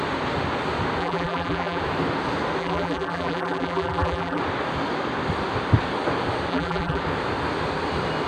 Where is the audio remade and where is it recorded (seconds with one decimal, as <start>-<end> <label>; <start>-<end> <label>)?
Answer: 0.0-1.0 recorded; 1.0-1.8 remade; 1.8-2.6 recorded; 2.6-4.4 remade; 4.4-6.5 recorded; 6.5-7.0 remade; 7.0-8.3 recorded